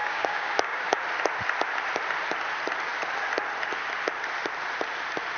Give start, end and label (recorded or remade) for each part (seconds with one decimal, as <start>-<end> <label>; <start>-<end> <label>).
0.0-1.0 remade; 1.0-5.4 recorded